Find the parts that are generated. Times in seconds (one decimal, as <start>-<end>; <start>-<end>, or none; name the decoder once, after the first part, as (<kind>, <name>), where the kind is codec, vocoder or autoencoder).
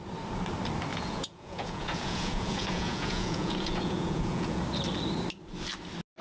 0.9-4.6 (vocoder, Vocos)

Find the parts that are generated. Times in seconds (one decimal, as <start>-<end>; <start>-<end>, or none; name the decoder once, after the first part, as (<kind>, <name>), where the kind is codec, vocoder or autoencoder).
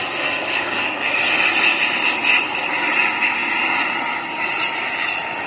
0.4-1.2 (codec, DAC)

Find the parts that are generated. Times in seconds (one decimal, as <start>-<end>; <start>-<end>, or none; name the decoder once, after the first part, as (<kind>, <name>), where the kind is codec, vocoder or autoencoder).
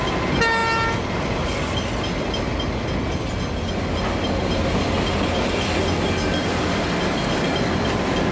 none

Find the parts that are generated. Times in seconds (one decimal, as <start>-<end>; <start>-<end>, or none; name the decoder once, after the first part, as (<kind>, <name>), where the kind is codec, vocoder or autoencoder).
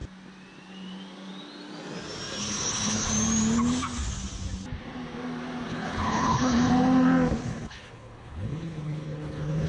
2.4-3.1 (codec, HILCodec); 5.7-6.7; 7.4-9.7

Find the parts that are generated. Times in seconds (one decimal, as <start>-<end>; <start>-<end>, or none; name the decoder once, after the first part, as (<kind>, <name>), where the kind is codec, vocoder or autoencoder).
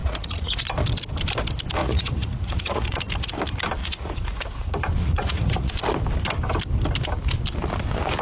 0.0-0.6 (vocoder, Vocos); 1.8-3.0; 3.8-4.5; 5.0-5.7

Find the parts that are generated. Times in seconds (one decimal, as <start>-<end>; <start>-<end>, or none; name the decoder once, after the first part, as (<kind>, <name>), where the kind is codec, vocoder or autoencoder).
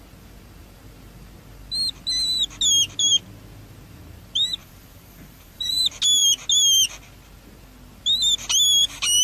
4.6-5.8 (vocoder, BigVGAN v2)